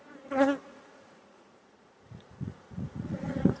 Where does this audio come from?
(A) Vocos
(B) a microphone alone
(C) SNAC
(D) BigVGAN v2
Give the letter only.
A